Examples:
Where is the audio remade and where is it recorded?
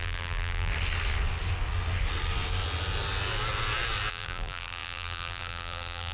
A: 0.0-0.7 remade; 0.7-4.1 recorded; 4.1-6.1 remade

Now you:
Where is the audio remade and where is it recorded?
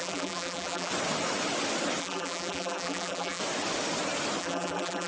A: 0.0-0.9 remade; 0.9-2.0 recorded; 2.0-3.4 remade; 3.4-4.4 recorded; 4.4-5.1 remade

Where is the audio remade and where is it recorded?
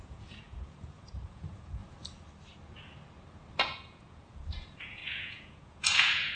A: 0.0-1.8 remade; 1.8-3.6 recorded; 3.6-6.3 remade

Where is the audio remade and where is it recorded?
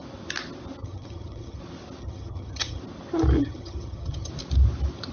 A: 0.0-0.8 recorded; 0.8-1.6 remade; 1.6-2.0 recorded; 2.0-2.8 remade; 2.8-3.4 recorded; 3.4-4.3 remade; 4.3-5.1 recorded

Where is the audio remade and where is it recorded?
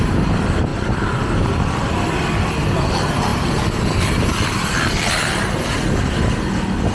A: 0.0-0.7 recorded; 0.7-1.3 remade; 1.3-3.3 recorded; 3.3-5.1 remade; 5.1-6.9 recorded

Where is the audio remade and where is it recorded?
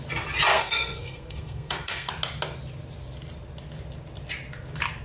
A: 0.0-0.5 recorded; 0.5-2.1 remade; 2.1-5.0 recorded